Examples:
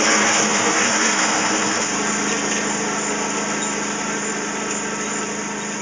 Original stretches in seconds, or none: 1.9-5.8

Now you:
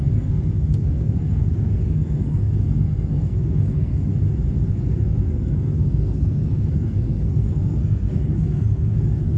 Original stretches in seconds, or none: 4.1-4.7

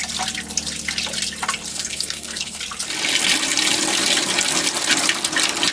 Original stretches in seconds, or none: 0.0-1.7; 2.6-5.7